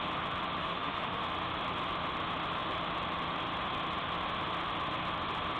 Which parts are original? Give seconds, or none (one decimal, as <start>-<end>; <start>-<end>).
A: 0.0-0.6; 1.2-5.6